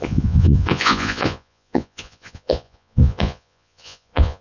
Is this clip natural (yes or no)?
no